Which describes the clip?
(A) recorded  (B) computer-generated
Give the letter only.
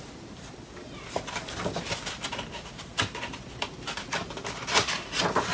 A